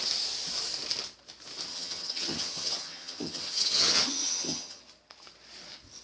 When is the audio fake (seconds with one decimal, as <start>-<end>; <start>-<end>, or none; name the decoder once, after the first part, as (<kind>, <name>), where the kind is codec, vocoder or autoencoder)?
1.7-4.8 (vocoder, HiFi-GAN)